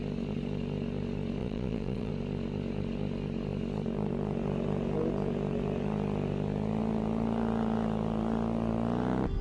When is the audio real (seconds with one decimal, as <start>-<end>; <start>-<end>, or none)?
0.0-1.4; 2.1-9.4